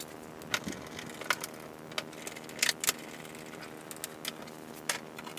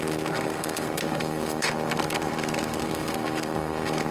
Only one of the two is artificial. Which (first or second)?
second